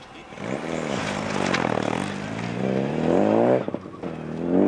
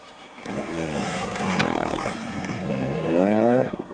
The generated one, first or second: second